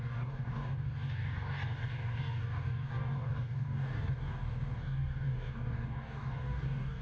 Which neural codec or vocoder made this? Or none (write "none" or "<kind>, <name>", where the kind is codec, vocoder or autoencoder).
codec, DAC